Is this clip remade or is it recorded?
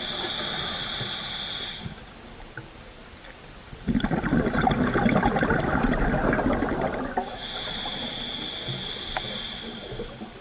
recorded